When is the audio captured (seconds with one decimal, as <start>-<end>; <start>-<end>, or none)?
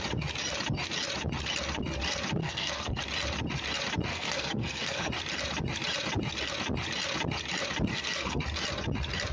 0.0-2.4; 3.0-4.1; 5.1-7.9; 8.4-9.3